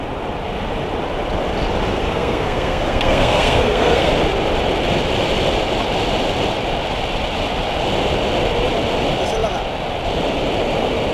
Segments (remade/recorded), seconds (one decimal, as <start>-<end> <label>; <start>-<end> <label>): 0.0-1.9 recorded; 1.9-4.1 remade; 4.1-11.1 recorded